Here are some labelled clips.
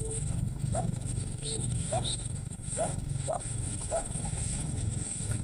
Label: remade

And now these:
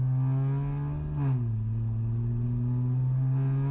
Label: recorded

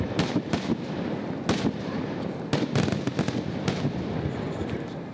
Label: recorded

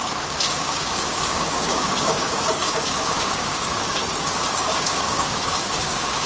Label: remade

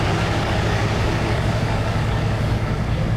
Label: remade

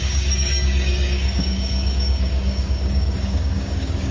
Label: remade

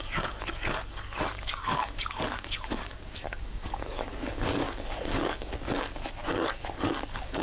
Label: remade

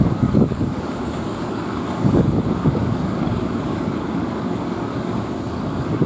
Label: remade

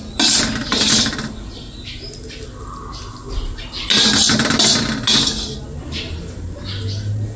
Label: recorded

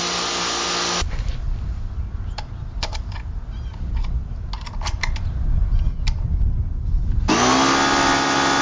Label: recorded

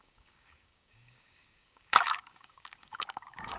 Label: remade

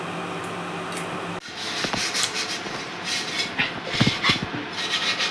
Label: recorded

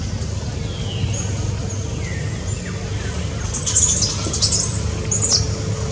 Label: recorded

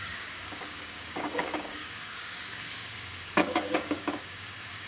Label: remade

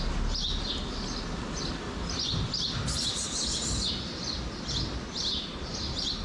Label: recorded